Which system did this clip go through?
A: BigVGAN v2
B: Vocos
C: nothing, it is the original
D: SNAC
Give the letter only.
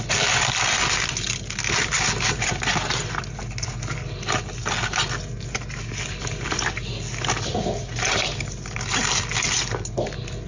C